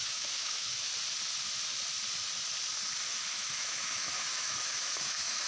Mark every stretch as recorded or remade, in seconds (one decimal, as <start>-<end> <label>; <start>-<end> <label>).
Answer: 0.0-0.9 remade; 0.9-3.3 recorded; 3.3-5.5 remade